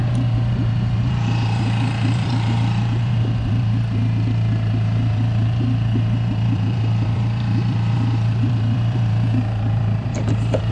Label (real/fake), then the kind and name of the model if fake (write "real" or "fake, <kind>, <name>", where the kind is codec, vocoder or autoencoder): fake, vocoder, BigVGAN v2